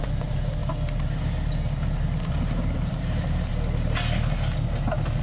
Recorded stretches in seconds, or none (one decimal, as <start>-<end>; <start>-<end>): 0.6-2.2; 3.5-5.2